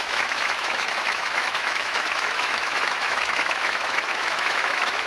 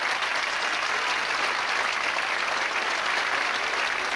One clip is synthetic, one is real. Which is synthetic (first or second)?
first